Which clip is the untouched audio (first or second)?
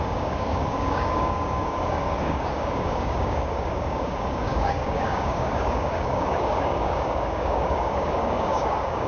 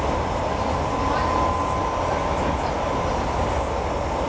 second